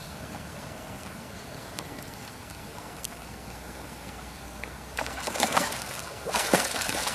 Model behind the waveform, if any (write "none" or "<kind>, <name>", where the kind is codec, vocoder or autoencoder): codec, SNAC